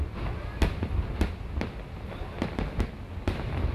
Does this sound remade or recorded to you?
recorded